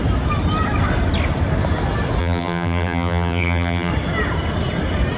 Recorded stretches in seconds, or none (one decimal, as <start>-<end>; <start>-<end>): 0.0-2.2; 3.9-5.2